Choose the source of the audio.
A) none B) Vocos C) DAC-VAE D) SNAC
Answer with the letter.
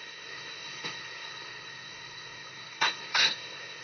D